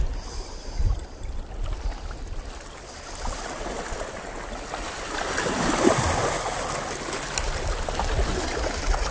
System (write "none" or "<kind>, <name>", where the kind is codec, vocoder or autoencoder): none